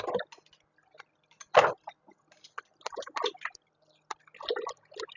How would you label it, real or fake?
real